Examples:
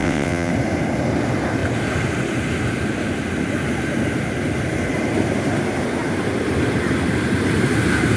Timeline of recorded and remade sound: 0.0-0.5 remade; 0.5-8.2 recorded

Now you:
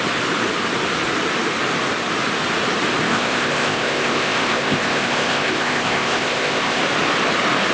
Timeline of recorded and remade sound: 0.0-3.1 recorded; 3.1-6.8 remade; 6.8-7.7 recorded

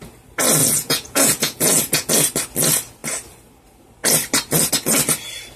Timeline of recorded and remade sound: 0.0-0.6 recorded; 0.6-2.1 remade; 2.1-5.6 recorded

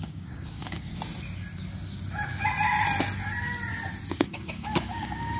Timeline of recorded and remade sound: 0.0-0.9 remade; 0.9-4.1 recorded; 4.1-5.4 remade

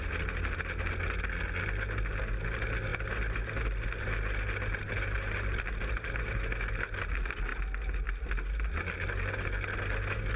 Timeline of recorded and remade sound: 0.0-10.4 recorded

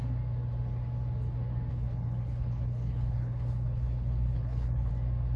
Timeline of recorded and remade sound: 0.0-1.7 recorded; 1.7-4.9 remade; 4.9-5.4 recorded

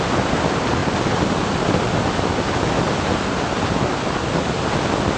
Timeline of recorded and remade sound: 0.0-5.2 recorded